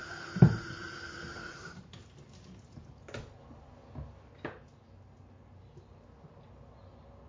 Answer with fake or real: real